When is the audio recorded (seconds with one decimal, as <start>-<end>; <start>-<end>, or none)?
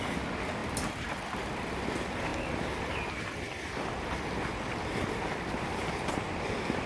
0.0-6.9